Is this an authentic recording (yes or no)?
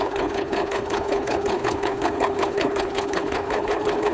no